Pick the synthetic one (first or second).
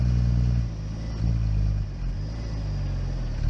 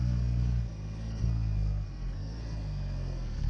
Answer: second